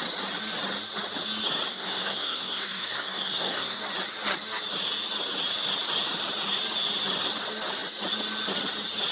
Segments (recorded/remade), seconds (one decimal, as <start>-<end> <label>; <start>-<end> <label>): 0.0-1.7 recorded; 1.7-3.8 remade; 3.8-9.1 recorded